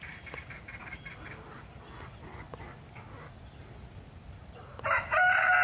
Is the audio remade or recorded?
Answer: recorded